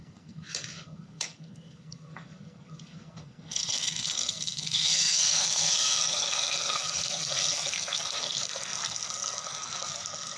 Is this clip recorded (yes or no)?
no